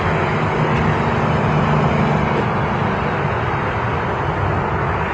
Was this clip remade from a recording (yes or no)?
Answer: no